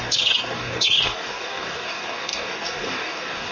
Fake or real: fake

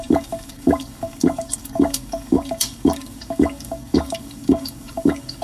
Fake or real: fake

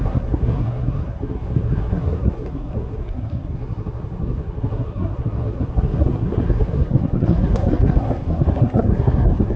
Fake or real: fake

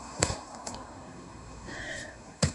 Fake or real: fake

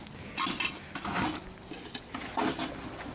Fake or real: real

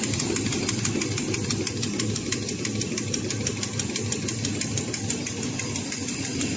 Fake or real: fake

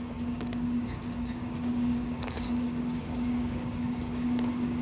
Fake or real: fake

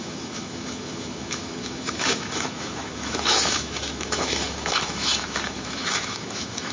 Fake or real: fake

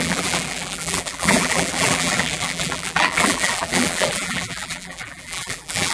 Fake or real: fake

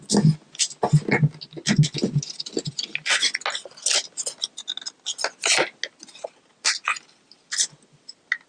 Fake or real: real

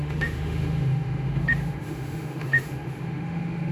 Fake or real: fake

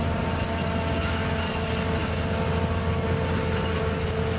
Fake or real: real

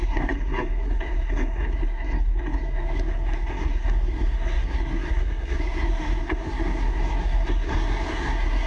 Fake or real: fake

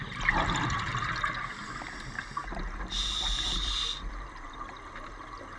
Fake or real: real